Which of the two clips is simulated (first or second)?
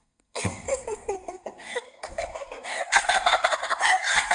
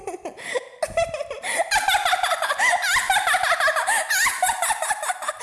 first